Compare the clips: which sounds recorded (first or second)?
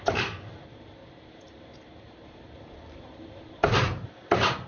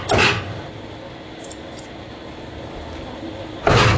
second